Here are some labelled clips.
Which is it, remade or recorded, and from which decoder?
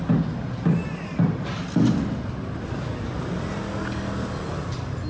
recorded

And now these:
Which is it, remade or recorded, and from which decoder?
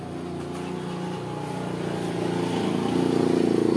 recorded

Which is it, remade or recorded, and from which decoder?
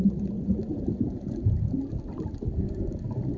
recorded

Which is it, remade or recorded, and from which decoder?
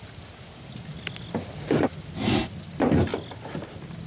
recorded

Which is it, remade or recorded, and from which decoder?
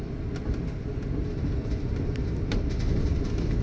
recorded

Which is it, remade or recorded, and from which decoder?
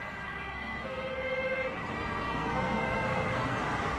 remade, codec, SNAC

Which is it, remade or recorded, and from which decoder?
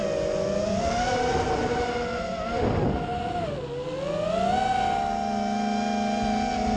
recorded